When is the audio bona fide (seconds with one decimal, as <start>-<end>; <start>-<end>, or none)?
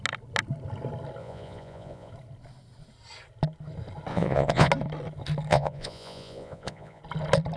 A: 0.0-1.2; 2.1-4.1; 4.7-5.5; 7.0-7.6